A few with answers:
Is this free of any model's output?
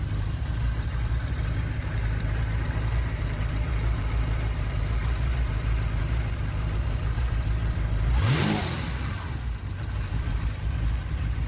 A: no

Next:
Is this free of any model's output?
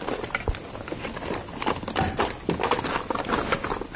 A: yes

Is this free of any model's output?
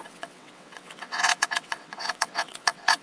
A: no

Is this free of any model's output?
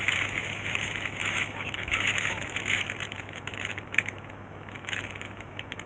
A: no